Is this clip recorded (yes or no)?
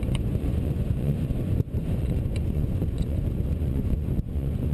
no